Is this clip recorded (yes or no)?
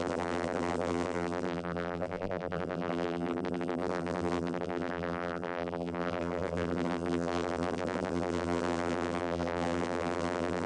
no